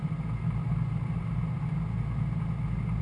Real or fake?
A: real